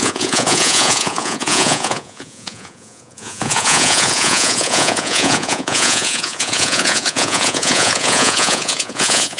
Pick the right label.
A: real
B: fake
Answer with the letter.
B